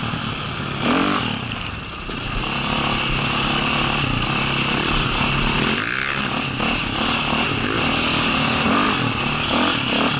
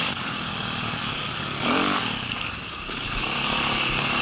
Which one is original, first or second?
first